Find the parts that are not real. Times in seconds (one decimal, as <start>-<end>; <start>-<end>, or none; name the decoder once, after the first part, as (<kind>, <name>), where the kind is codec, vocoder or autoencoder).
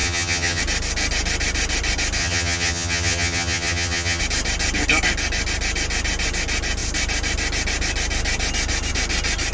0.0-0.6 (vocoder, HiFi-GAN); 2.2-4.2